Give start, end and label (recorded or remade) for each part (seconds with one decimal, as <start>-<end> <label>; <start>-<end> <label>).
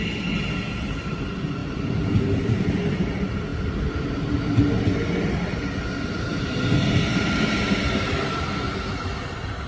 0.0-1.6 recorded; 1.6-2.7 remade; 2.7-9.7 recorded